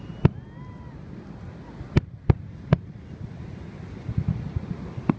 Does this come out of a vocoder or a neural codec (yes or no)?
no